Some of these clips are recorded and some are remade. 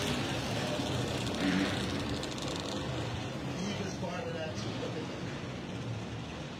recorded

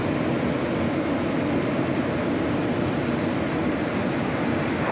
recorded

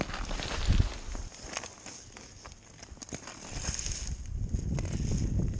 recorded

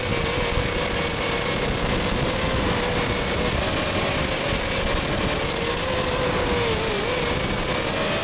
recorded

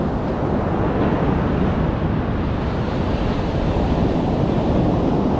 recorded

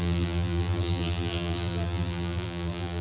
remade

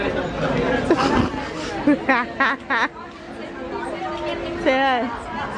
recorded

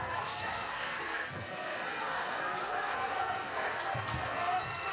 remade